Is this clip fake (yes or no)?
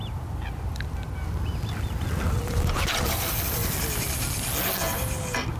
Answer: no